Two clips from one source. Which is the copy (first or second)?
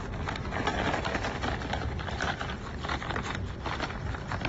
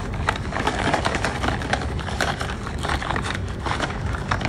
second